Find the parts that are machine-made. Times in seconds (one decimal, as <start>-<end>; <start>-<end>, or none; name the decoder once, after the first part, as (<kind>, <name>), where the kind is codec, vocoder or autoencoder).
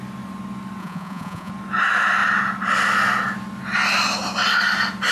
0.8-1.5 (vocoder, Vocos)